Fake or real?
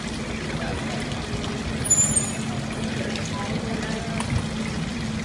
real